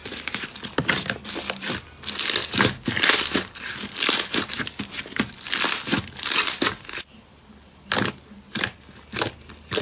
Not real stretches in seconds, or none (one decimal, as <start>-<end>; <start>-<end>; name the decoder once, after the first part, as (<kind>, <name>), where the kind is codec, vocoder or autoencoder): none